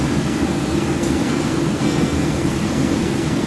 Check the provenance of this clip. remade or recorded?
remade